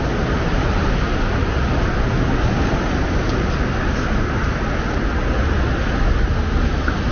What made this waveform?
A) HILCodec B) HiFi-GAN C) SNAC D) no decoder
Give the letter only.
D